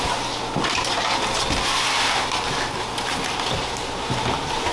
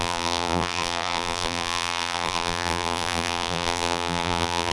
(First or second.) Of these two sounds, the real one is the first